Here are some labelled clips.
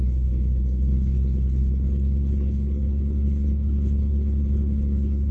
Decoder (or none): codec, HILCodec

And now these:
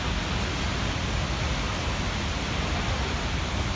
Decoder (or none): none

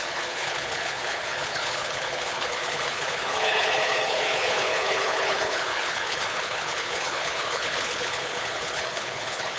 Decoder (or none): codec, HILCodec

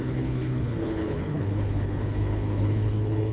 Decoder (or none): codec, HILCodec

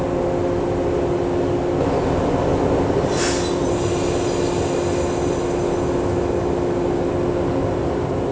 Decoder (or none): none